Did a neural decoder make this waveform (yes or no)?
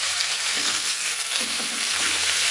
yes